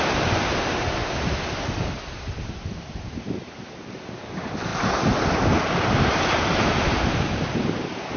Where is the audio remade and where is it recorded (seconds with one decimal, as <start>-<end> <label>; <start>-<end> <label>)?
0.0-1.0 remade; 1.0-1.9 recorded; 1.9-4.7 remade; 4.7-6.4 recorded; 6.4-8.2 remade